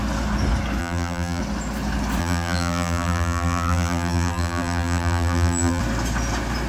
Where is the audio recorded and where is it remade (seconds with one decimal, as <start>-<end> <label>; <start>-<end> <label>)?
0.0-0.8 recorded; 0.8-1.4 remade; 1.4-2.2 recorded; 2.2-5.8 remade; 5.8-6.7 recorded